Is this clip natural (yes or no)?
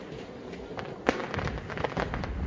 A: yes